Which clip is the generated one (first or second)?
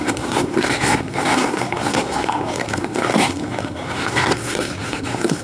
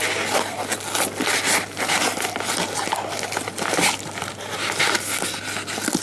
first